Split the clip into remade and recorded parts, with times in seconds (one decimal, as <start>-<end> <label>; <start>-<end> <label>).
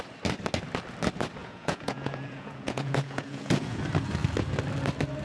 0.0-1.4 recorded; 1.4-3.8 remade; 3.8-5.2 recorded